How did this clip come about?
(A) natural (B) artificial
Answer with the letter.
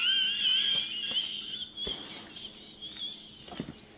A